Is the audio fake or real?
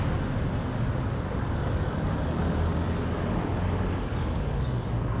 fake